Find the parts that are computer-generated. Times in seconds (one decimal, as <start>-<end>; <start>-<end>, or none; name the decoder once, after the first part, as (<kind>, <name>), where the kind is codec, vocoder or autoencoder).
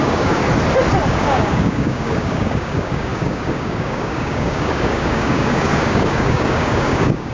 0.0-0.4 (codec, DAC); 1.1-7.3